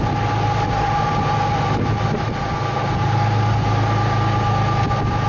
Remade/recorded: recorded